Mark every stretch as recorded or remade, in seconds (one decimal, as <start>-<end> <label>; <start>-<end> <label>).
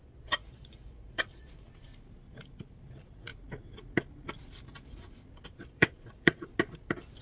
0.0-1.9 remade; 1.9-2.9 recorded; 2.9-3.3 remade; 3.3-5.5 recorded; 5.5-6.5 remade; 6.5-7.2 recorded